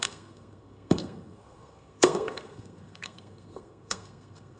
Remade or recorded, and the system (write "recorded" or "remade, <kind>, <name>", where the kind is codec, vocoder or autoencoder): remade, codec, SNAC